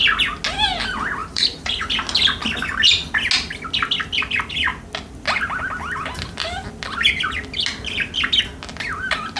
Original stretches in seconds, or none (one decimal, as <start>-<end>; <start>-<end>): 0.0-1.2; 1.8-9.4